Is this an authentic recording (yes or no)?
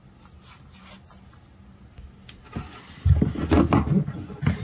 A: yes